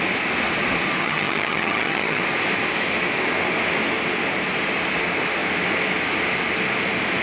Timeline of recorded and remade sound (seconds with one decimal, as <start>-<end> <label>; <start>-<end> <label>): 0.0-1.0 recorded; 1.0-2.2 remade; 2.2-7.2 recorded